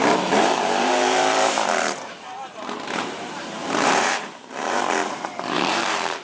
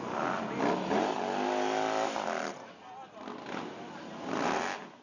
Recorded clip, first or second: second